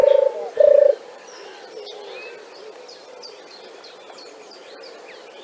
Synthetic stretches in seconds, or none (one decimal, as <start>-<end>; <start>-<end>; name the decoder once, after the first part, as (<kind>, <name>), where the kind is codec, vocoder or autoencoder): 0.0-1.2 (vocoder, BigVGAN v2)